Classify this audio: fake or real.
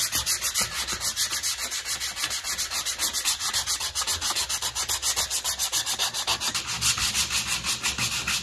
real